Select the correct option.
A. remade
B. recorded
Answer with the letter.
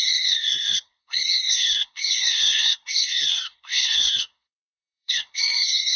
A